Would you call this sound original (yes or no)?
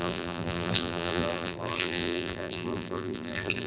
no